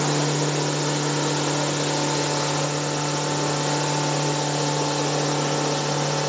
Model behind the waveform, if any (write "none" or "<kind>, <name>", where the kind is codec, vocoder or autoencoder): none